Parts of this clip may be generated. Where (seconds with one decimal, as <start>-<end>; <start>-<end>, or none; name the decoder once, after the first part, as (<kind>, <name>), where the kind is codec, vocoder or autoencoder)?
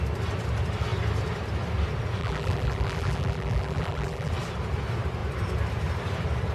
2.2-4.3 (vocoder, BigVGAN v2)